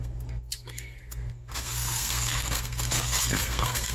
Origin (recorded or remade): remade